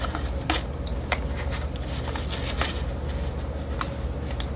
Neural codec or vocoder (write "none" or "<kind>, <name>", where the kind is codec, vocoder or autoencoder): none